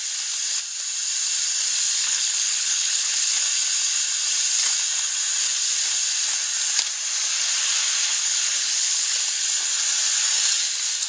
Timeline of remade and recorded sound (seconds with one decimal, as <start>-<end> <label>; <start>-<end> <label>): 0.0-2.0 recorded; 2.0-3.3 remade; 3.3-8.1 recorded; 8.1-9.1 remade; 9.1-11.1 recorded